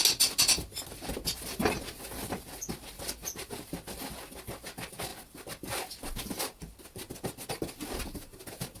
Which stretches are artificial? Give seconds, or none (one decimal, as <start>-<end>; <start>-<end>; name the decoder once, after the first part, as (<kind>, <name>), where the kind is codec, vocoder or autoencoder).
none